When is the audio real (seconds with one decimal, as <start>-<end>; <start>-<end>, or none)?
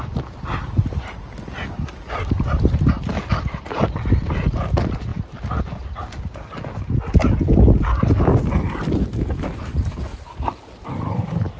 0.0-5.1; 5.6-10.1; 10.6-11.6